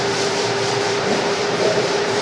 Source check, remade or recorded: remade